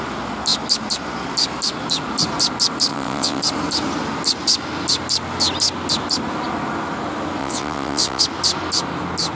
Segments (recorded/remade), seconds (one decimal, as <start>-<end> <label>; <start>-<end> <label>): 0.0-2.9 recorded; 2.9-3.4 remade; 3.4-7.4 recorded; 7.4-8.2 remade; 8.2-9.3 recorded